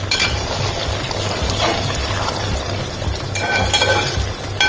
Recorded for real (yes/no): yes